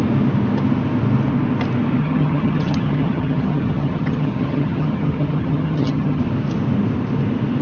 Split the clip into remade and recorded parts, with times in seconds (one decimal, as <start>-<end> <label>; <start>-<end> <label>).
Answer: 0.0-2.0 recorded; 2.0-6.2 remade; 6.2-7.6 recorded